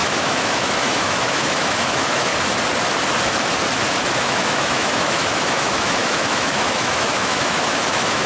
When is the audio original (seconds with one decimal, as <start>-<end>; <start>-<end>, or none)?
2.3-4.1